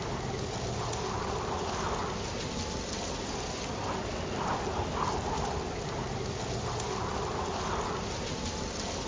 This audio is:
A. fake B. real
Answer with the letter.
B